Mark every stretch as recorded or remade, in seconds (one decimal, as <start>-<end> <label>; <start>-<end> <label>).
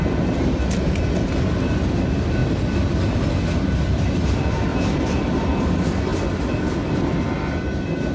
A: 0.0-4.7 recorded; 4.7-5.6 remade; 5.6-6.1 recorded; 6.1-7.2 remade; 7.2-8.1 recorded